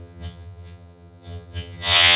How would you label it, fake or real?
fake